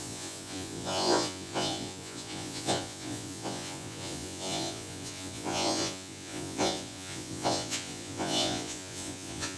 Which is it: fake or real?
fake